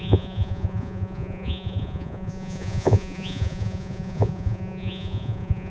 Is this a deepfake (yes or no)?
yes